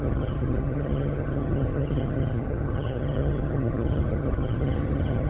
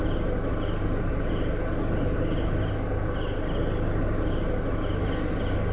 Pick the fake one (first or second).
first